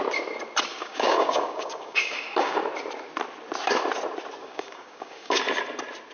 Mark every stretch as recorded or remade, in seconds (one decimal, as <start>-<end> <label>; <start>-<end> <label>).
0.0-0.7 recorded; 0.7-2.6 remade; 2.6-4.4 recorded; 4.4-5.4 remade; 5.4-6.1 recorded